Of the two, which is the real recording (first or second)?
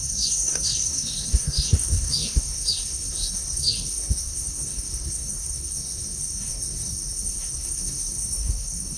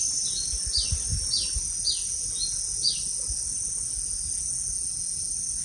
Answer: second